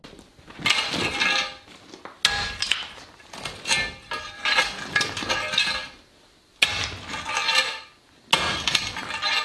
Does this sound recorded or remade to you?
recorded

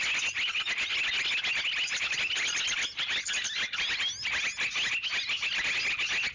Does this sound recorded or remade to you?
recorded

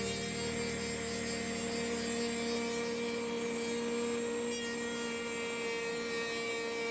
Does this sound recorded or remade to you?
recorded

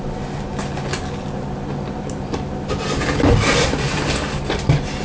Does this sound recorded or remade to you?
recorded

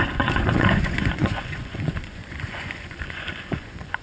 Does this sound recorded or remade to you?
remade